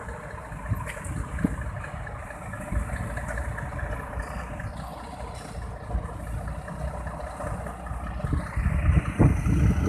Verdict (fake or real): real